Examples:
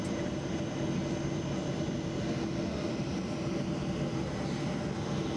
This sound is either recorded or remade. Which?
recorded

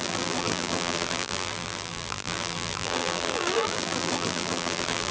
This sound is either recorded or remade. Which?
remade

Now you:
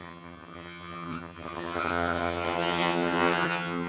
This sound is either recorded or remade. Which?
remade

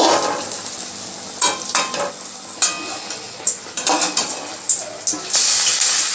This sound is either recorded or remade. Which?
recorded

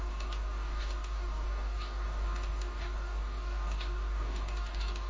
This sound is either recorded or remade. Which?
remade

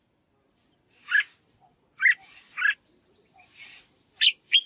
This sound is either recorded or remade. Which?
recorded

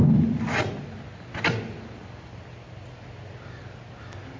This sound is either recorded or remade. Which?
recorded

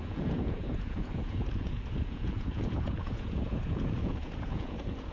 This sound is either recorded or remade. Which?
remade